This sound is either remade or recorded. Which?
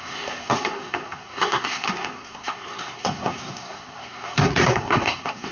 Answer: remade